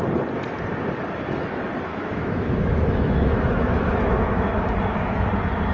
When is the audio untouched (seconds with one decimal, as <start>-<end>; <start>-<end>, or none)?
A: 0.0-1.9; 5.3-5.7

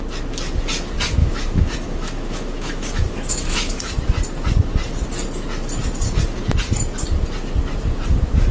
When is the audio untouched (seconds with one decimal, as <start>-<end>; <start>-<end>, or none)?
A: 0.0-1.2; 3.8-8.5

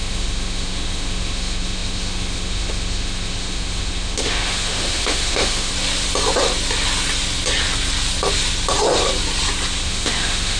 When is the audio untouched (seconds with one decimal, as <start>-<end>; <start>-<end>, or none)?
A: 5.7-9.8

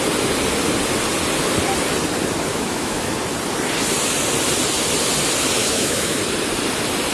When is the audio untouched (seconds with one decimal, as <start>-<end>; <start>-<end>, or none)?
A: 0.0-2.5; 3.1-5.6; 6.2-7.1

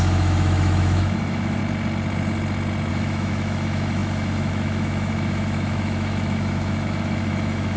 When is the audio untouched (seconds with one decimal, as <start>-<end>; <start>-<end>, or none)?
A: 1.6-2.9

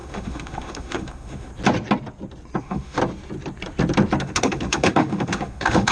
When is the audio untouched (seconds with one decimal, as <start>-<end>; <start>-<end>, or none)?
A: 1.5-2.6; 3.0-4.2

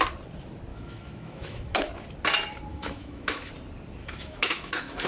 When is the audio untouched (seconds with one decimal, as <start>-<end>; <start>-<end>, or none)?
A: 0.0-0.7; 1.9-2.7; 3.5-4.0